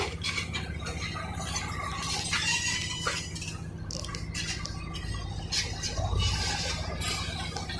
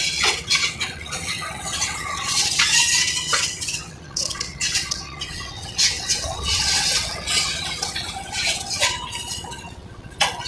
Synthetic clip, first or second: second